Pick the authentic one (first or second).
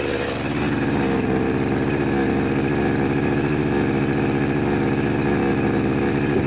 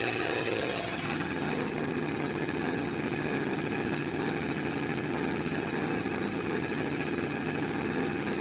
first